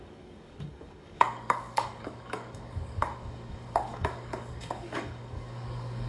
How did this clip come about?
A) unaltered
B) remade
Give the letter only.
B